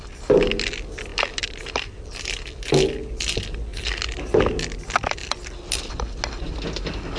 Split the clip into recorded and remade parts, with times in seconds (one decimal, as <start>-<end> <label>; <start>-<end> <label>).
0.0-7.2 recorded